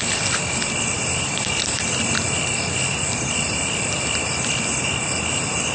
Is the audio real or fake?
fake